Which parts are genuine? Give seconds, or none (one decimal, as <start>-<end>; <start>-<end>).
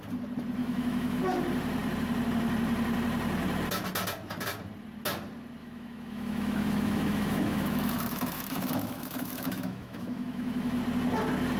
0.0-0.6; 1.2-5.6; 10.8-11.6